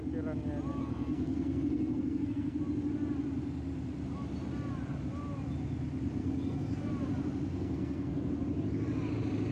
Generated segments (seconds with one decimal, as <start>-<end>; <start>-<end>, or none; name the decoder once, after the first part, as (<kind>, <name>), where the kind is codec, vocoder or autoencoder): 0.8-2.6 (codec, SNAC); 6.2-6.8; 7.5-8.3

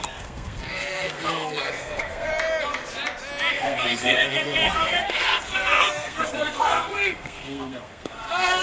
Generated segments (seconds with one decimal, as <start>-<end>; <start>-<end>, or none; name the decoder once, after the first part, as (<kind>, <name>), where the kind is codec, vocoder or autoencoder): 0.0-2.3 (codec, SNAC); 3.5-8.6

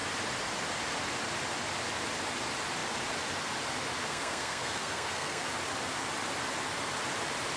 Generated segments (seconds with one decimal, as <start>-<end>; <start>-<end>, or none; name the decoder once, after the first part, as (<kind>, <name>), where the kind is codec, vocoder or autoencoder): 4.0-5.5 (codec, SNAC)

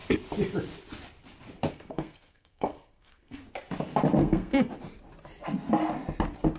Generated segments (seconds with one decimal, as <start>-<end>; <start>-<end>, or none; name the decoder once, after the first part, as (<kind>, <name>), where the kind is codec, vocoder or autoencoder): 1.7-3.4 (codec, SNAC); 4.2-4.7